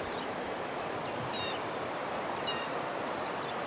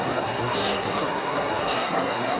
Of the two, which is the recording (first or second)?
first